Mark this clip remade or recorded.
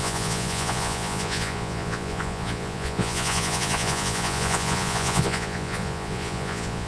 remade